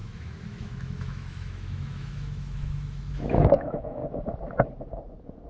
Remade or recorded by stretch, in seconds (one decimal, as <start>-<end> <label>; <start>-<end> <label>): 0.0-4.0 remade; 4.0-5.5 recorded

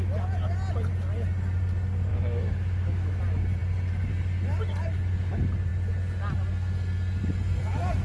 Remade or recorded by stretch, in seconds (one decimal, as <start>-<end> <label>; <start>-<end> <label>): 0.0-2.1 recorded; 2.1-3.2 remade; 3.2-8.0 recorded

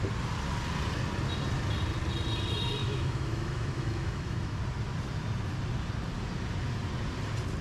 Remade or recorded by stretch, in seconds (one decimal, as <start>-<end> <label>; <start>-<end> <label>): 0.0-2.8 recorded; 2.8-4.6 remade; 4.6-7.6 recorded

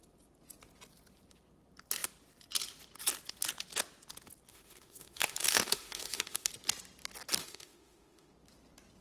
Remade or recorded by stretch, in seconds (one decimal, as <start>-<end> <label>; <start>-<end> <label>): 0.0-4.5 recorded; 4.5-6.5 remade; 6.5-7.4 recorded; 7.4-8.3 remade; 8.3-9.0 recorded

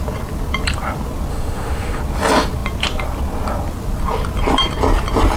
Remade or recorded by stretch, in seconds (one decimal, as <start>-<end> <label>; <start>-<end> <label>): 0.0-1.3 recorded; 1.3-2.0 remade; 2.0-5.4 recorded

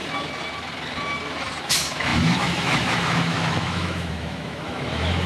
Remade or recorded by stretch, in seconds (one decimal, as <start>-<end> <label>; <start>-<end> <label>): 0.0-1.6 recorded; 1.6-5.3 remade

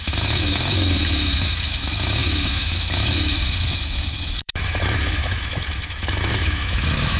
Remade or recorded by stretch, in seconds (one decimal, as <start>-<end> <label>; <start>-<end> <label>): 0.0-7.2 remade